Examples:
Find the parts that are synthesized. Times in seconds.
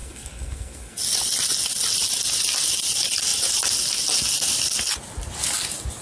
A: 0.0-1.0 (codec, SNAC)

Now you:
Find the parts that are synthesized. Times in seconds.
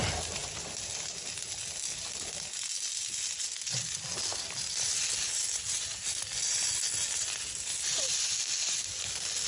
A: none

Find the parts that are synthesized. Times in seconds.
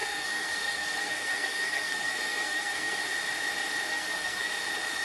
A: 0.0-3.0 (codec, SNAC); 3.9-4.5